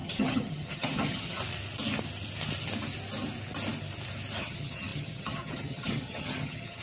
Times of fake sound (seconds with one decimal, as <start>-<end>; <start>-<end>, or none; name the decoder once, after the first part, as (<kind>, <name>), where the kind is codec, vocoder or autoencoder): 0.0-1.4 (vocoder, HiFi-GAN); 4.4-6.8